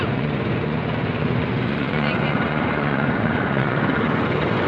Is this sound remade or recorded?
remade